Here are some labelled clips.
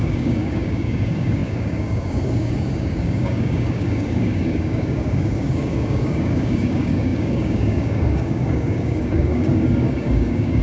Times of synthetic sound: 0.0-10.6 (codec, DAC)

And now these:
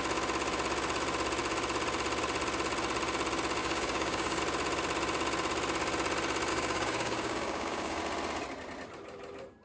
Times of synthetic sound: 3.6-4.4 (codec, DAC); 6.5-8.0

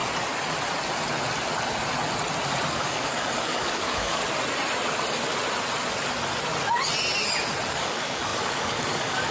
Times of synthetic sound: 2.7-4.2 (codec, DAC); 7.7-9.3

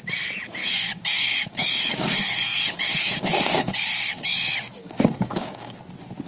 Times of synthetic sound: 0.6-4.2 (codec, DAC); 4.8-5.8